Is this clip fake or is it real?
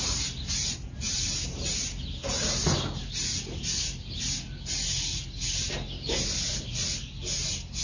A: real